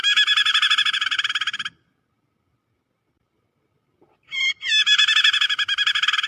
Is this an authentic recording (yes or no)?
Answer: yes